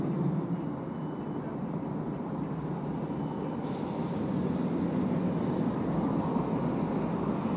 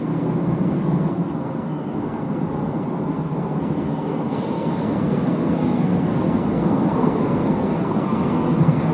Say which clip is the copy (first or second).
second